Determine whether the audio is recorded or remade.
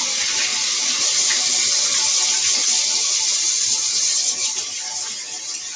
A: recorded